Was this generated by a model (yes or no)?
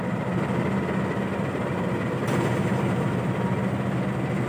no